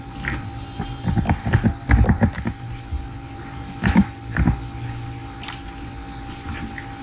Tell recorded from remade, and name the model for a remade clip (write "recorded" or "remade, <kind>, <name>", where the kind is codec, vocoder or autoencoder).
recorded